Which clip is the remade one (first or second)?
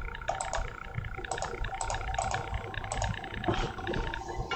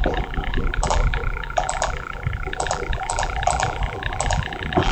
second